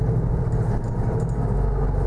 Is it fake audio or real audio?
real